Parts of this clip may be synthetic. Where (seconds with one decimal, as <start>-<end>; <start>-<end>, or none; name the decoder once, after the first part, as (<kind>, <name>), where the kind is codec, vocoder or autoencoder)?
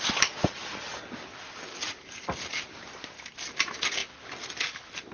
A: none